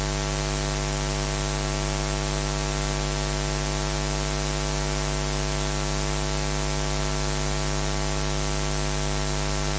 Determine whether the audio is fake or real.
real